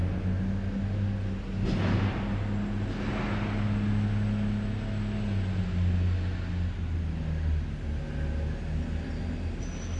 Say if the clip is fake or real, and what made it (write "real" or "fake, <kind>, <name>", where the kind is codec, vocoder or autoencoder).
real